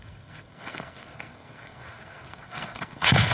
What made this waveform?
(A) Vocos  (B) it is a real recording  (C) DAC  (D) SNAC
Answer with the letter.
D